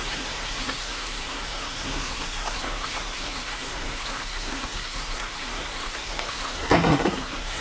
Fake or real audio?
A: fake